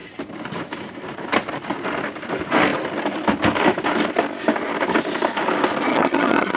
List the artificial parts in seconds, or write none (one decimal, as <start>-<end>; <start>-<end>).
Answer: 5.9-6.6